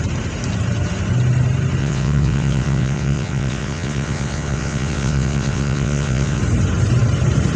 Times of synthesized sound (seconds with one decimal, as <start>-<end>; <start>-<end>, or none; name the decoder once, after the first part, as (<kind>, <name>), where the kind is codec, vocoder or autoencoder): 1.8-6.4 (vocoder, WaveNeXt)